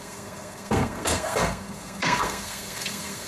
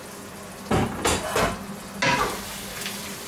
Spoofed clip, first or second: first